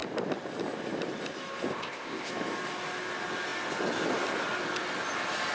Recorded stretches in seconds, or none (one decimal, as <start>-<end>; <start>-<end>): 0.0-1.7; 2.3-5.5

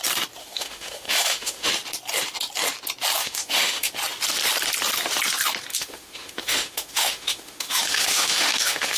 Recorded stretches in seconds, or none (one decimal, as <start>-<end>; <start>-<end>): 0.0-0.4; 1.7-3.2; 3.9-5.7

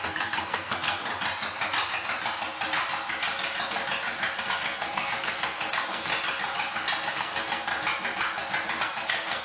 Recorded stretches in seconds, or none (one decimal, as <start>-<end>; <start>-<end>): 1.1-4.4; 6.1-7.1; 7.7-8.8

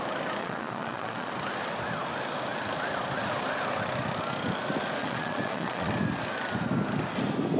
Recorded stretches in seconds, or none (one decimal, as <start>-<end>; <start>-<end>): 0.0-0.4; 1.3-5.0; 5.9-7.6

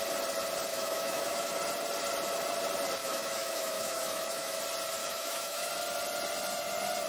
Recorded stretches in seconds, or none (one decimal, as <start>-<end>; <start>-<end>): 0.0-0.7; 1.5-3.0; 4.6-5.0; 5.7-7.1